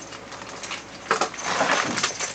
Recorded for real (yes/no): yes